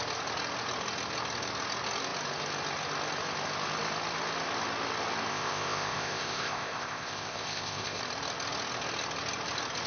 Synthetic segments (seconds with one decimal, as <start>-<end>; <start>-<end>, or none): 5.3-8.0